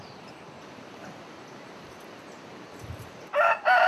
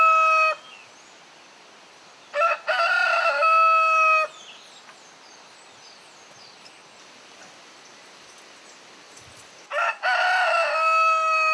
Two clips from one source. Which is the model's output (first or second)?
first